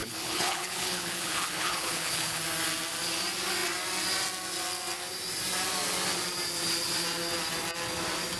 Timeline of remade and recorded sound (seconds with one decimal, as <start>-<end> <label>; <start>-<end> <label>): 0.0-2.4 remade; 2.4-8.4 recorded